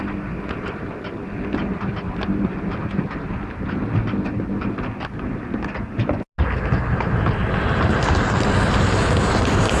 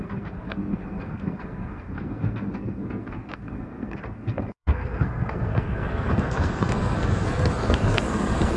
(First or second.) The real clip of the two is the first